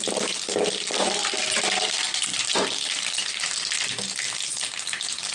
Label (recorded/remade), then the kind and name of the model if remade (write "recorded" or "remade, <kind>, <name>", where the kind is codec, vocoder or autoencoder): recorded